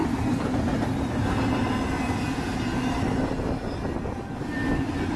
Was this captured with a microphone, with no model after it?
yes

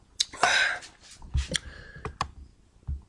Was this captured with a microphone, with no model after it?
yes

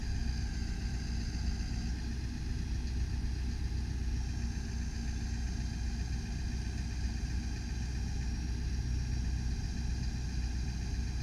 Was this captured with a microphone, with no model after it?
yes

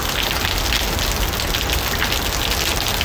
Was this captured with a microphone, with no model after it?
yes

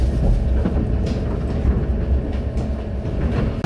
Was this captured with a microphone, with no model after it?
yes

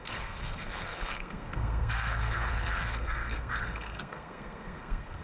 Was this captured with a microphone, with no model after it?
no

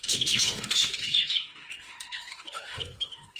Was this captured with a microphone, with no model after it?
no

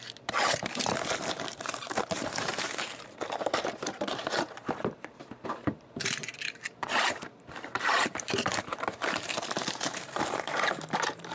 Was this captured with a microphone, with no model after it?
no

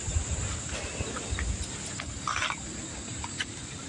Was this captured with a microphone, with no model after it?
yes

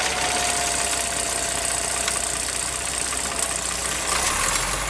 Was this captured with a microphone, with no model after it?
yes